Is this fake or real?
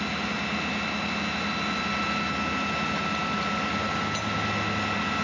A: real